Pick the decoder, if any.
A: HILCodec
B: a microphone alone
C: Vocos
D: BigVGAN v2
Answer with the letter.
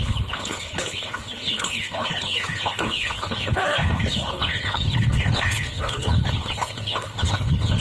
A